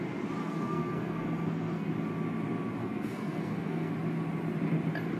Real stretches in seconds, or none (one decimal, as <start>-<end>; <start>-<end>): 0.0-0.4; 1.9-2.8; 3.9-5.2